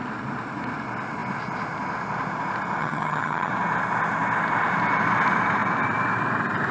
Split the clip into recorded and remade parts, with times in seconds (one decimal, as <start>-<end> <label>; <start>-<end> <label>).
0.0-2.8 recorded; 2.8-3.5 remade; 3.5-6.7 recorded